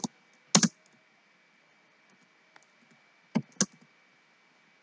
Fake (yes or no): no